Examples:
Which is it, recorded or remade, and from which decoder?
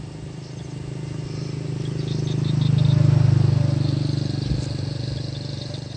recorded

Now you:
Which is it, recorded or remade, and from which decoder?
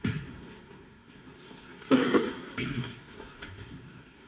remade, codec, SNAC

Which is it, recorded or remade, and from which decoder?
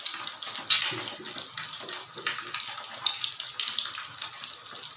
recorded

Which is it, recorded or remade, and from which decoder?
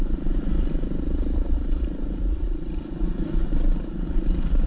remade, vocoder, Vocos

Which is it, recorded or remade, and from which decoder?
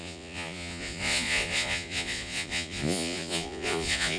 remade, vocoder, Vocos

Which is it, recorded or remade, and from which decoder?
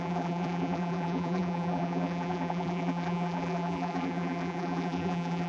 remade, vocoder, BigVGAN v2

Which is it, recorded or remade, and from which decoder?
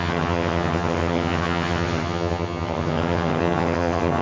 remade, vocoder, HiFi-GAN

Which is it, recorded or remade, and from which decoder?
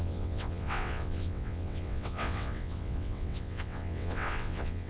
remade, vocoder, WaveNeXt